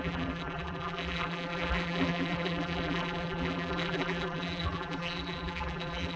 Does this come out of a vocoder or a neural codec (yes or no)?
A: yes